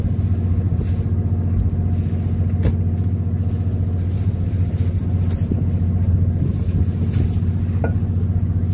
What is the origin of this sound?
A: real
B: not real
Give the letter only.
A